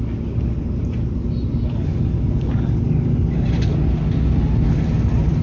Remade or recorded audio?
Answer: recorded